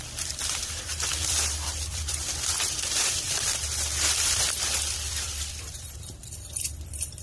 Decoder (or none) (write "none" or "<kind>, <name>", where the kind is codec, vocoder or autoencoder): vocoder, BigVGAN v2